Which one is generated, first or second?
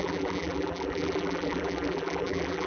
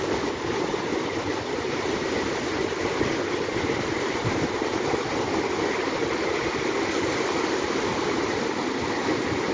first